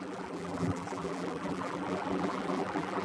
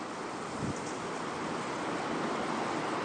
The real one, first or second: second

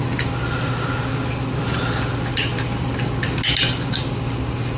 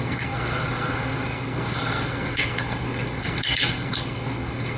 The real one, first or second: first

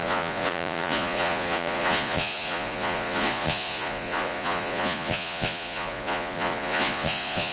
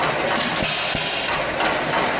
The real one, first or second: second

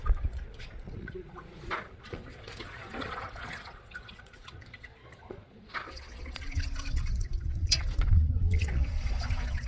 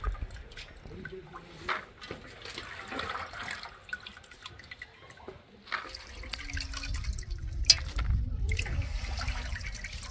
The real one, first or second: second